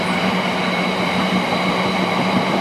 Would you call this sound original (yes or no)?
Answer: yes